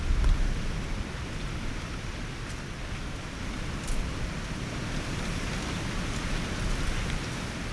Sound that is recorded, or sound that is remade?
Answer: recorded